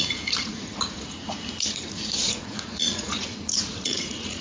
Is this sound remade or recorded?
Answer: remade